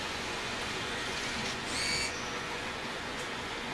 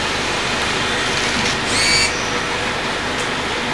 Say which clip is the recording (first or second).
second